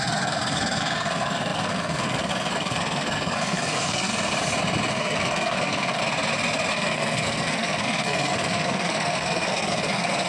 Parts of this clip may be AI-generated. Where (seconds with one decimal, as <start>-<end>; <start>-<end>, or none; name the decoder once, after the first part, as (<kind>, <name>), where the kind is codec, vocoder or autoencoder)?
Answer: 0.0-4.1 (codec, SNAC); 4.9-6.0; 6.7-10.3